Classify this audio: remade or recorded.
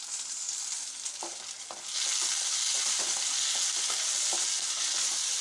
recorded